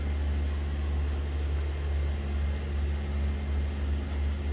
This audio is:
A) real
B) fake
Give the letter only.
A